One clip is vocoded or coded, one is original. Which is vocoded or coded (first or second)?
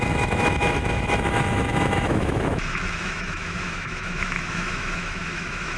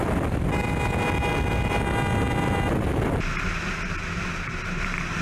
first